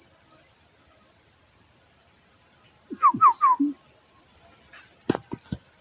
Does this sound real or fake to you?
real